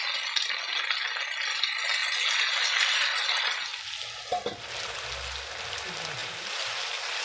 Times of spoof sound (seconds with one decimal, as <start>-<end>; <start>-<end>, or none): 6.2-7.2